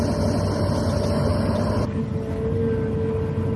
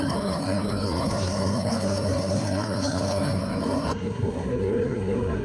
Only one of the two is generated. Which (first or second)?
second